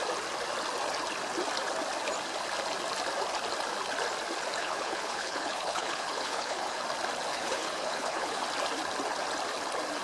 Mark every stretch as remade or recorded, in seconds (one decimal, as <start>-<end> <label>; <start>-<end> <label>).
0.0-4.6 recorded; 4.6-6.8 remade; 6.8-7.3 recorded; 7.3-8.4 remade; 8.4-10.0 recorded